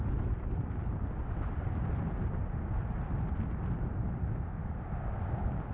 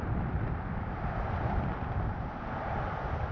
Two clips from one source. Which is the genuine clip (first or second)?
first